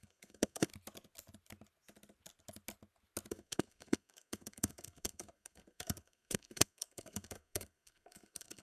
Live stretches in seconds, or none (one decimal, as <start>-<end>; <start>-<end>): 0.7-3.3